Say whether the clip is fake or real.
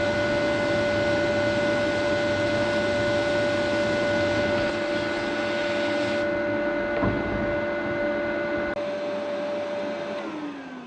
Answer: real